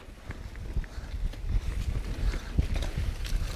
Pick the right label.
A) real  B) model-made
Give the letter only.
A